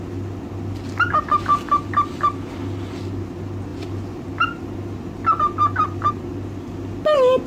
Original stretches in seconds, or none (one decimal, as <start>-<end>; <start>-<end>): 0.0-1.5; 2.5-7.5